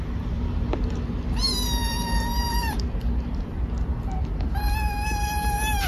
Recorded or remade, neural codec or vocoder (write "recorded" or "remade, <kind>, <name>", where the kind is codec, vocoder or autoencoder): remade, vocoder, BigVGAN v2